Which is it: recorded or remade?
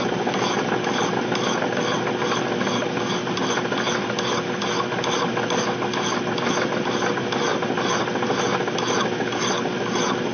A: recorded